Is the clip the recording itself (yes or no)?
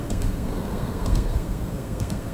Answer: no